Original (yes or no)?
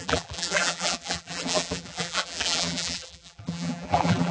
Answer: no